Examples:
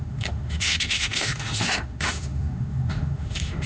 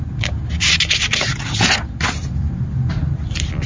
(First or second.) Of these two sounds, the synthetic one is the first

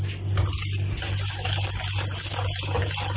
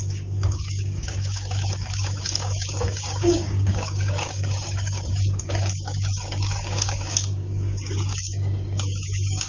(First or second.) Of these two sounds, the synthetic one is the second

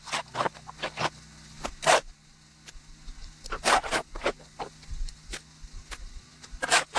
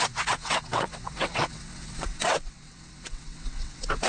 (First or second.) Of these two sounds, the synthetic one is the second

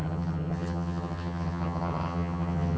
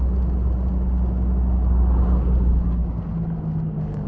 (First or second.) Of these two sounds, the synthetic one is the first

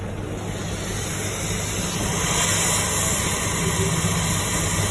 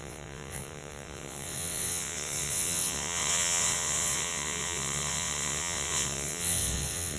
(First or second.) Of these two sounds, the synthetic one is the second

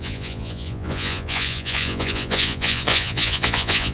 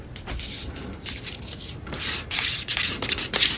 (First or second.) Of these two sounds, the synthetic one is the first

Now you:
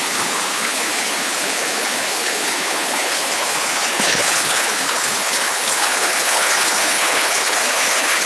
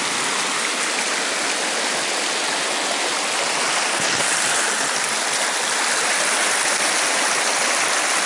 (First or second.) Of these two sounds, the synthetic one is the first